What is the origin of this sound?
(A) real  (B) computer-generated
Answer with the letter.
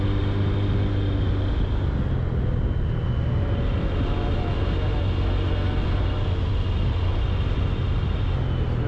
A